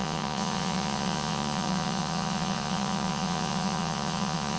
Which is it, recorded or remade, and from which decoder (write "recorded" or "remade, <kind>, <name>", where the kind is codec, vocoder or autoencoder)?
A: remade, vocoder, Vocos